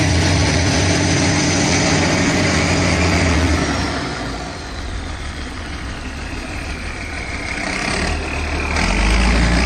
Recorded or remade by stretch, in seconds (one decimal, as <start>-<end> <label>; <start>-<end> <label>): 0.0-7.8 remade; 7.8-9.7 recorded